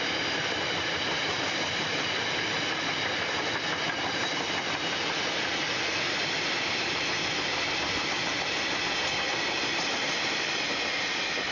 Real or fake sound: real